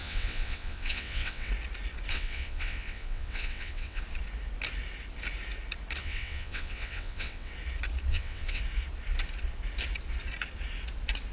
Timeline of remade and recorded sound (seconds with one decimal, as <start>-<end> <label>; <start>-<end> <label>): 0.0-1.5 remade; 1.5-2.1 recorded; 2.1-4.0 remade; 4.0-6.0 recorded; 6.0-7.5 remade; 7.5-8.1 recorded; 8.1-8.6 remade; 8.6-11.3 recorded